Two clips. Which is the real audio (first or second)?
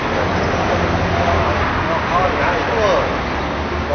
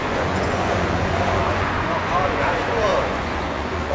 first